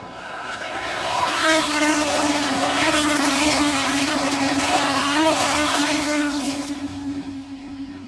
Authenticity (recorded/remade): remade